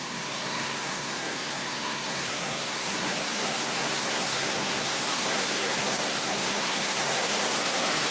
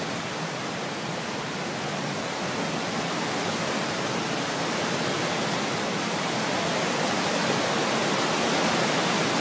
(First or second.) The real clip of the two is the second